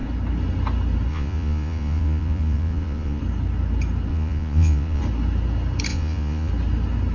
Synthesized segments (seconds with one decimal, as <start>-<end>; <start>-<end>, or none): 1.1-3.2; 4.1-5.0; 5.9-6.5